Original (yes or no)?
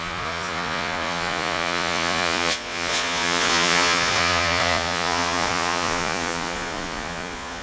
no